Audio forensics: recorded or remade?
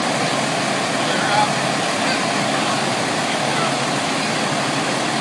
recorded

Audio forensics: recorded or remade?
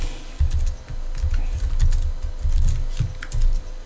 recorded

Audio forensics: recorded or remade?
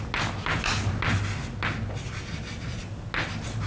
recorded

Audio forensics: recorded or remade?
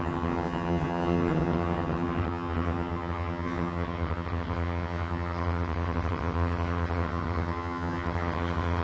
remade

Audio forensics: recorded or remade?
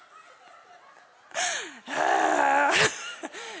recorded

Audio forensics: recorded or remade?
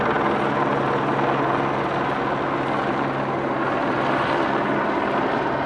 recorded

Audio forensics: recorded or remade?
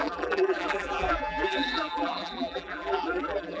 remade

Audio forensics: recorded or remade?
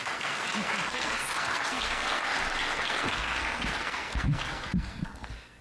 remade